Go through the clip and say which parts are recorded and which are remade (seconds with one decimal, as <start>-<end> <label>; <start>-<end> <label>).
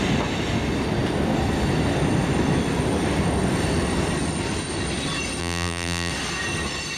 0.0-5.4 recorded; 5.4-6.1 remade; 6.1-7.0 recorded